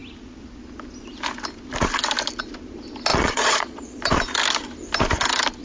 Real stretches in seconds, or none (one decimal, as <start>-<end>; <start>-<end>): 0.0-3.1; 4.0-5.6